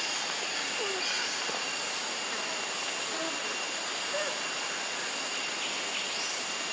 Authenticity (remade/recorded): recorded